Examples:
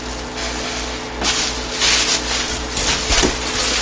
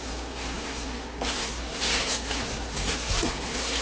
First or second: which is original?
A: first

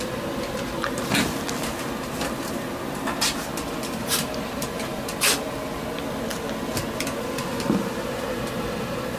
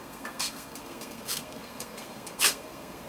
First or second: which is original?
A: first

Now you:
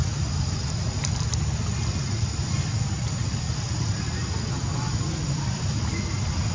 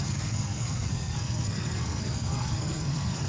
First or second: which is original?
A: first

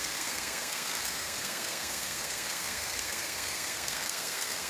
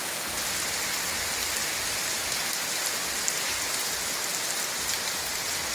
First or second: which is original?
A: second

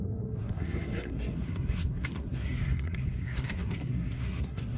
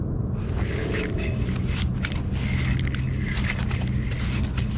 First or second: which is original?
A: second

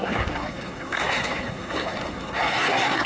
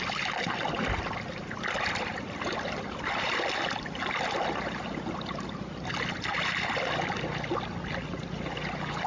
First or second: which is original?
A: second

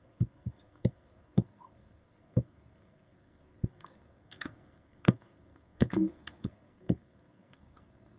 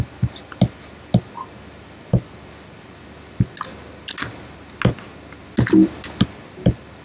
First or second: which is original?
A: second